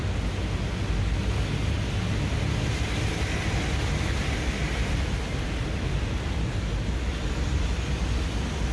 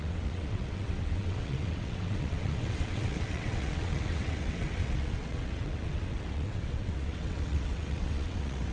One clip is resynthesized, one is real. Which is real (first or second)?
first